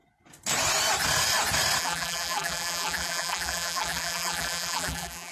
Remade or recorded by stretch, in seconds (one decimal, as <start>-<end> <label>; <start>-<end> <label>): 0.0-1.8 recorded; 1.8-5.3 remade